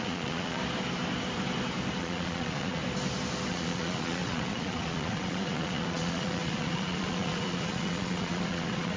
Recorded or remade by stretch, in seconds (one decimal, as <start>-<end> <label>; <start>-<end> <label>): 0.0-0.6 remade; 0.6-2.0 recorded; 2.0-2.8 remade; 2.8-3.5 recorded; 3.5-9.0 remade